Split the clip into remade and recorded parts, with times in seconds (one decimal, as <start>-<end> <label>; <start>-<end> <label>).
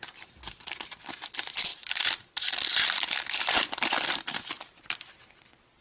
0.0-1.7 recorded; 1.7-5.1 remade; 5.1-5.8 recorded